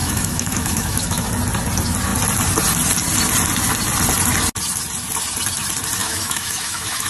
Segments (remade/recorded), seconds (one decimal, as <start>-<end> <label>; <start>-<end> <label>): 0.0-1.3 remade; 1.3-6.0 recorded; 6.0-7.1 remade